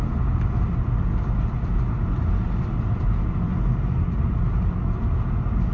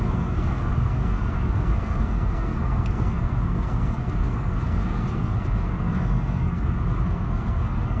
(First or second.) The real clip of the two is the first